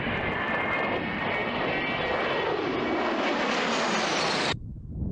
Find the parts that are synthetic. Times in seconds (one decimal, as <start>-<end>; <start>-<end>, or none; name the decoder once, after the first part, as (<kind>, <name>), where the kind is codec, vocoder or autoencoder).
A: 0.0-1.4 (vocoder, BigVGAN v2); 4.1-5.1